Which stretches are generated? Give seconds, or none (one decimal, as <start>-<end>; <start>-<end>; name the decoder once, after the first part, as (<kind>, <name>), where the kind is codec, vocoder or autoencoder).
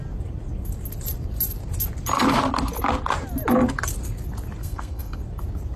4.6-5.2 (codec, SNAC)